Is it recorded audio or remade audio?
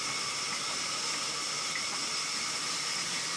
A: recorded